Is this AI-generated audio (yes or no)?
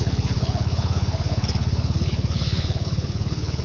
yes